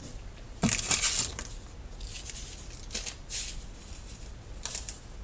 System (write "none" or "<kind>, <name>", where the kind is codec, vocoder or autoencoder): none